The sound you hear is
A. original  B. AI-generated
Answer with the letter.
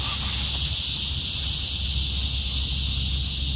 A